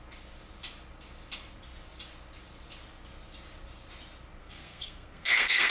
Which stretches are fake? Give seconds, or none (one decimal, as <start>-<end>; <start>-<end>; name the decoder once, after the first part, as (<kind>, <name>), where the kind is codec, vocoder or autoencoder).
4.4-5.7 (codec, SNAC)